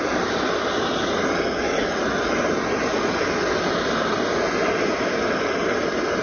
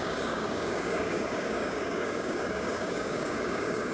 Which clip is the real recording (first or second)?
first